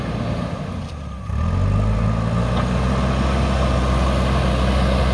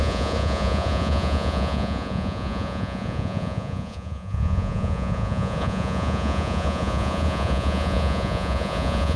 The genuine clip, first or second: first